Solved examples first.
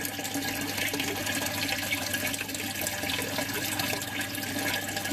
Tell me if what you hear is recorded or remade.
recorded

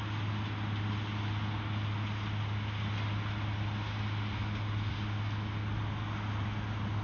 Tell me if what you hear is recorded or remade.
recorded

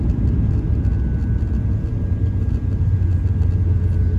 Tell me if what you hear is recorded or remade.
recorded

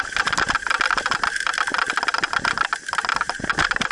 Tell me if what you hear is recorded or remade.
recorded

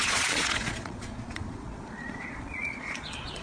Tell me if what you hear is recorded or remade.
remade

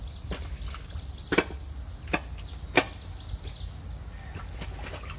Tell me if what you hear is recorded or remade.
recorded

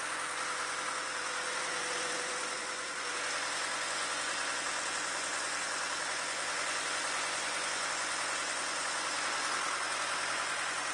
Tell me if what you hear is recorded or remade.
remade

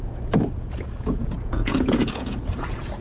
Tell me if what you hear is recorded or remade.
remade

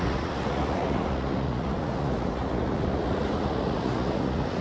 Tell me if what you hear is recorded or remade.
remade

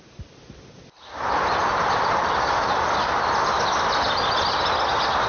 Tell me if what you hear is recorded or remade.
recorded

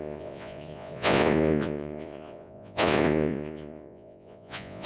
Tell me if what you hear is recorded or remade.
remade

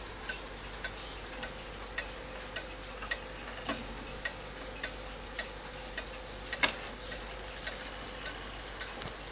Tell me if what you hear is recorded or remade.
recorded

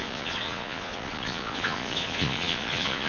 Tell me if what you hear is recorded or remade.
remade